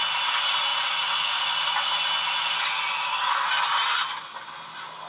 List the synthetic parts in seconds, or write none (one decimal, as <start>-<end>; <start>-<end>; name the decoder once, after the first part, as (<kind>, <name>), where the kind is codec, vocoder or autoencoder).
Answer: none